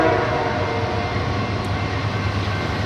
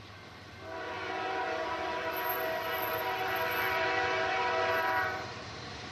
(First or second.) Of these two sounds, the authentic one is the first